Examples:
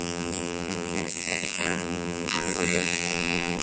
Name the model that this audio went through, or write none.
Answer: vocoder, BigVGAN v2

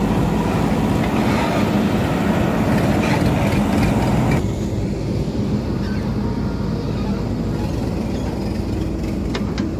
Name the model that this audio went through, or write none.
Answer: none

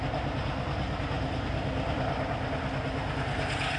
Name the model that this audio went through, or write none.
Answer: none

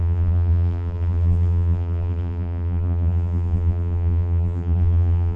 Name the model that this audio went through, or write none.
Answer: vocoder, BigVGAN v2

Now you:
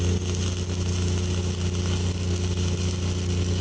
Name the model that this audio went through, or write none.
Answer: none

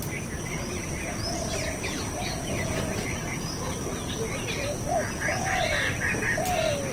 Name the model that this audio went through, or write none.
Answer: none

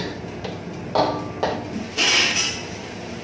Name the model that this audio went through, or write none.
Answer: none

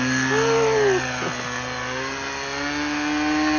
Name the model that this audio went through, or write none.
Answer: none